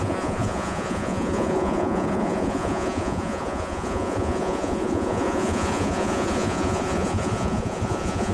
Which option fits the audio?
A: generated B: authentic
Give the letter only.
A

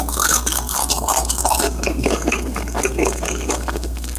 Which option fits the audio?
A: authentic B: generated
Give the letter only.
B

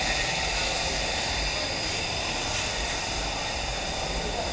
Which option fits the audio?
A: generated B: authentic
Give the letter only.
B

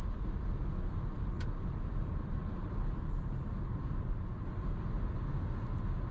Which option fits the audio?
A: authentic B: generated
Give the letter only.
A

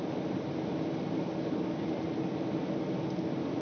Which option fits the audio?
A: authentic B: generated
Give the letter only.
A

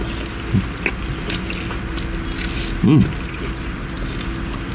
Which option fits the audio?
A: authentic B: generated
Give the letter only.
A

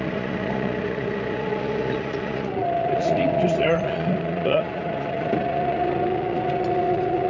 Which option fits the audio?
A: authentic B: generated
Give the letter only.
B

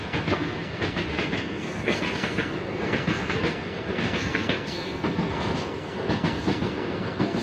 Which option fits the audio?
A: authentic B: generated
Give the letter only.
B